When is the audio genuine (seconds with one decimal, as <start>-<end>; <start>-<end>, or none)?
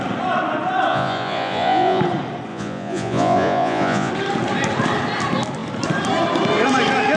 0.0-0.9; 2.0-2.5; 4.1-7.2